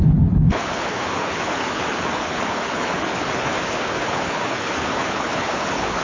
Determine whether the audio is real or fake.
fake